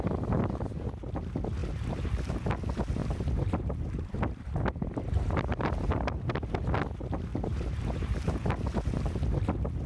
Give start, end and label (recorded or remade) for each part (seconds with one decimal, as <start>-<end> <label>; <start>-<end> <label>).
0.0-1.6 recorded; 1.6-2.3 remade; 2.3-3.0 recorded; 3.0-5.9 remade; 5.9-7.3 recorded; 7.3-8.6 remade; 8.6-9.9 recorded